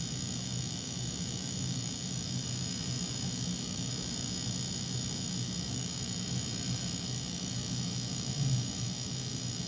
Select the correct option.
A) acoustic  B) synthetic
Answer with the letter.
B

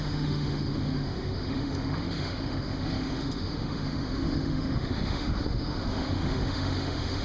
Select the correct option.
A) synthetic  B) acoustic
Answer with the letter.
A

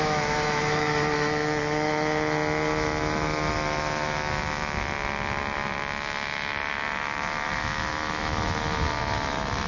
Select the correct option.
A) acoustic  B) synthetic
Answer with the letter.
B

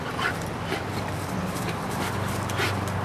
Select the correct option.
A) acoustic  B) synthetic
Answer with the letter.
A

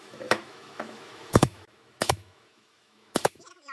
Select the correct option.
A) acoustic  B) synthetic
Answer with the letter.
B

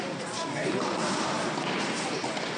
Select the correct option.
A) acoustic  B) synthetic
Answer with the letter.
A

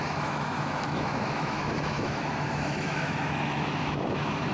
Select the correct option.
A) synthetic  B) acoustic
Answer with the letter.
A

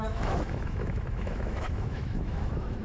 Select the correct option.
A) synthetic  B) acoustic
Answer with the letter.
A